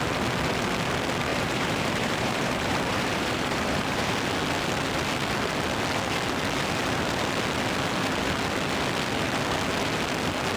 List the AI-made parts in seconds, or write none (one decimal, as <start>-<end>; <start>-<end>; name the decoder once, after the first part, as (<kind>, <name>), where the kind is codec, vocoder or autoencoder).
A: 1.3-4.1 (vocoder, BigVGAN v2)